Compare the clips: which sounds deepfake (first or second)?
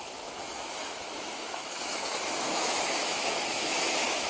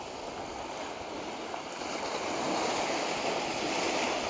first